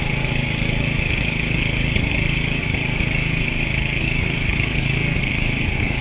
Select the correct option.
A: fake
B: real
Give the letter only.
A